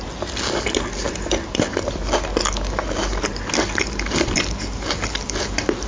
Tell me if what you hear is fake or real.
real